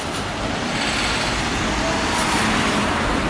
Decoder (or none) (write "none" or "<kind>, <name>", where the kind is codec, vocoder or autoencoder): none